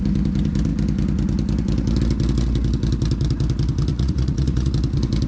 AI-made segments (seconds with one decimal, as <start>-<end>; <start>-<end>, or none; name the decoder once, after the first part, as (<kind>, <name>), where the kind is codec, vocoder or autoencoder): 3.9-4.7 (vocoder, Vocos)